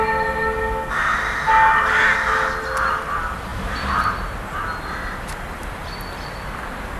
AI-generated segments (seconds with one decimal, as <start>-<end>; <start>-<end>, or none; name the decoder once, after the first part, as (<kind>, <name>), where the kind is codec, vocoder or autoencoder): none